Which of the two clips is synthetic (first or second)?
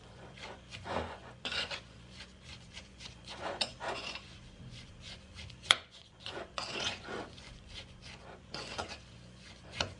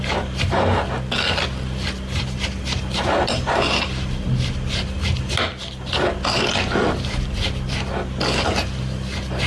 first